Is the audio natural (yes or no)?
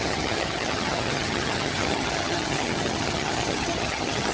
no